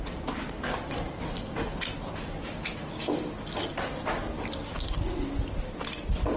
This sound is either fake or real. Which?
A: real